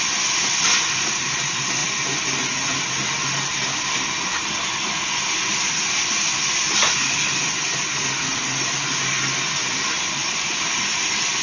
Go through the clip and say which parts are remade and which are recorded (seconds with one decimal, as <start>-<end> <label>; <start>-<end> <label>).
0.0-1.8 remade; 1.8-3.9 recorded; 3.9-11.4 remade

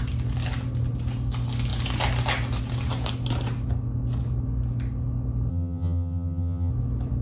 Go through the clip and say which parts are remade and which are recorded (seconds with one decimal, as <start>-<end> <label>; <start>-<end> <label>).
0.0-5.5 recorded; 5.5-6.7 remade; 6.7-7.2 recorded

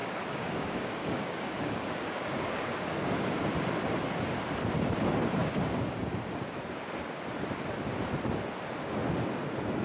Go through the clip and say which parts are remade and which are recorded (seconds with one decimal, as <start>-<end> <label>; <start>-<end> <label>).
0.0-3.1 remade; 3.1-5.4 recorded; 5.4-6.1 remade; 6.1-9.8 recorded

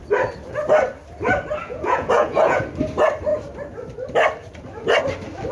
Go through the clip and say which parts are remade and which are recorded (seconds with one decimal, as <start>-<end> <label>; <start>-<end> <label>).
0.0-1.6 recorded; 1.6-2.6 remade; 2.6-5.5 recorded

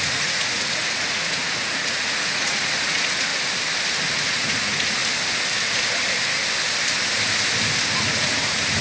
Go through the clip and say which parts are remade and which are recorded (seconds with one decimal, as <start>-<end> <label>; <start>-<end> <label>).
0.0-3.3 remade; 3.3-4.2 recorded; 4.2-5.0 remade; 5.0-7.9 recorded; 7.9-8.8 remade

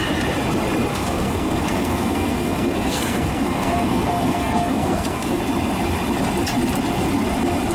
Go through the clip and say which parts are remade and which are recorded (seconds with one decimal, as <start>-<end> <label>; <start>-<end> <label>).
0.0-0.9 recorded; 0.9-5.4 remade; 5.4-7.7 recorded

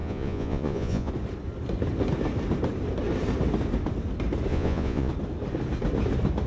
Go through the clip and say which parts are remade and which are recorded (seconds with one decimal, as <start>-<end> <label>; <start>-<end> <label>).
0.0-1.1 remade; 1.1-4.5 recorded; 4.5-5.1 remade; 5.1-6.5 recorded

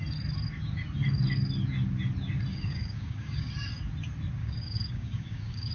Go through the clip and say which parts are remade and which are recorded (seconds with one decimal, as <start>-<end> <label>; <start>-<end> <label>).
0.0-2.5 recorded; 2.5-3.5 remade; 3.5-4.4 recorded; 4.4-5.7 remade